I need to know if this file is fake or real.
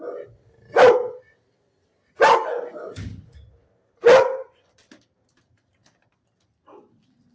real